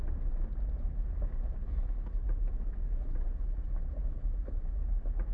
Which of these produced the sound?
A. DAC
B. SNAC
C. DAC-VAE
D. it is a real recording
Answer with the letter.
D